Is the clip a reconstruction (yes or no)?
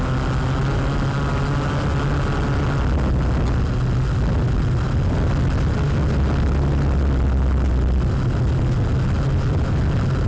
no